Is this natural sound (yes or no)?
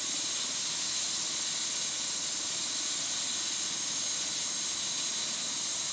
yes